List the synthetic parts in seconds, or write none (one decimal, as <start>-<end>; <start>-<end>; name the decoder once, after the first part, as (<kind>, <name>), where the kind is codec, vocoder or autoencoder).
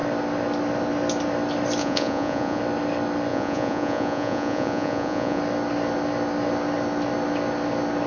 1.8-2.6 (vocoder, Vocos); 3.3-5.4